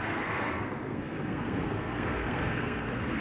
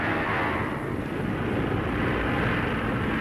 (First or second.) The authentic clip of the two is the second